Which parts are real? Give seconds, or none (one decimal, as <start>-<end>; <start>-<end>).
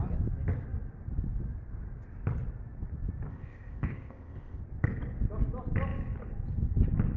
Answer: 0.0-3.3; 4.6-7.2